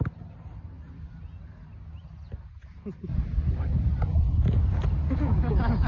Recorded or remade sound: recorded